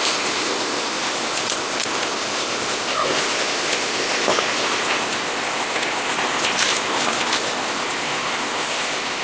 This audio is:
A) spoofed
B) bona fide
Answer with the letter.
A